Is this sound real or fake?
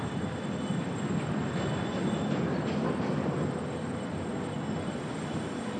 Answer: fake